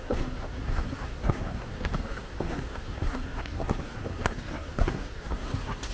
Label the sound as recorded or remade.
remade